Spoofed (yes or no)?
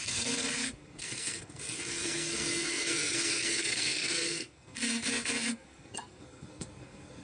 yes